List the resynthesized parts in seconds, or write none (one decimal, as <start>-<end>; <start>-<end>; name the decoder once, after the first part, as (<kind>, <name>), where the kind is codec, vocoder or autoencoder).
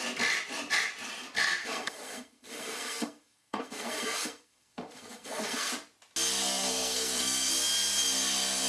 1.6-5.7 (codec, SNAC); 6.4-7.5